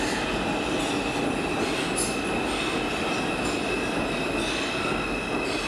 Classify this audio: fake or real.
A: real